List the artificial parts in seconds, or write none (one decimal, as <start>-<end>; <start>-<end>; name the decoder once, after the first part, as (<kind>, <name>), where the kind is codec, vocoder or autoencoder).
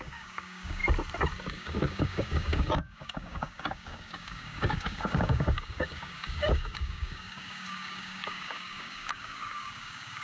0.0-0.8 (codec, DAC); 1.5-10.2